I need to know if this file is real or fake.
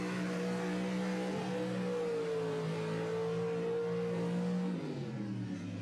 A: real